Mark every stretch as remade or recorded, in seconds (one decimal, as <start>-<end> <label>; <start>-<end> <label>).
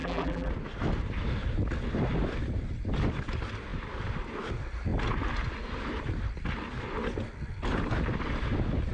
0.0-0.5 remade; 0.5-8.9 recorded